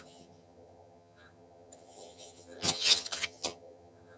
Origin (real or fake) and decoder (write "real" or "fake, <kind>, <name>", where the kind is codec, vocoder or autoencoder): fake, vocoder, HiFi-GAN